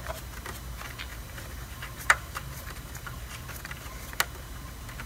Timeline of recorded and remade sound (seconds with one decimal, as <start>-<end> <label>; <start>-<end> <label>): 0.0-1.1 recorded; 1.1-3.5 remade; 3.5-5.1 recorded